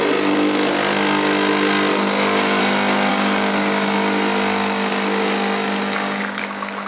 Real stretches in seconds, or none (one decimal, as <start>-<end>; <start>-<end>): 0.0-1.9; 2.6-3.1; 6.4-6.9